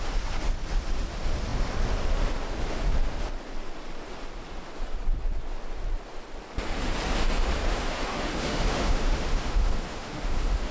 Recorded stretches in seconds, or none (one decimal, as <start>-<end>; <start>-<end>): 0.0-7.6